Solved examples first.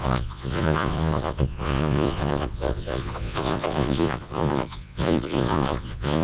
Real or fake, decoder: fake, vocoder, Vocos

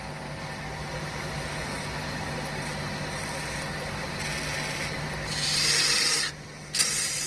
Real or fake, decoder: real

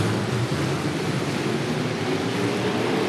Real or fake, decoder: real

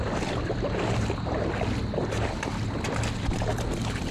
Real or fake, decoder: real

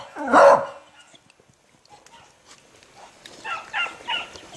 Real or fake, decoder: real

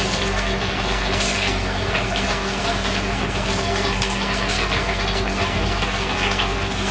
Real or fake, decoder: fake, codec, SNAC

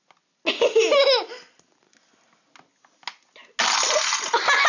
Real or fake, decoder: real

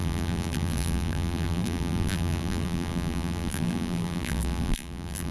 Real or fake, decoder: fake, vocoder, BigVGAN v2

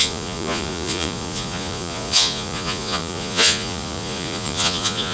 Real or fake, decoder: fake, vocoder, Vocos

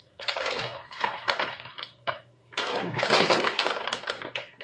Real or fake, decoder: fake, codec, SNAC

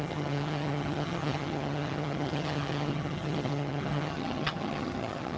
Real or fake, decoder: fake, vocoder, HiFi-GAN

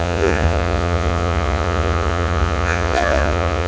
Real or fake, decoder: fake, vocoder, Vocos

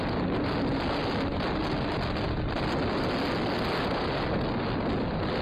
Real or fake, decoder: real